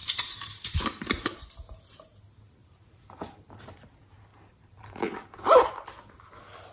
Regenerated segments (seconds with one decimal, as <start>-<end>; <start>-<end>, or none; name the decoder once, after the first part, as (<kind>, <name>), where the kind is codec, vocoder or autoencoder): 2.6-3.6 (vocoder, BigVGAN v2); 4.3-5.7